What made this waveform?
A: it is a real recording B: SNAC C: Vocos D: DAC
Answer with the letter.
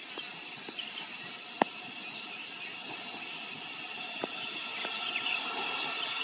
A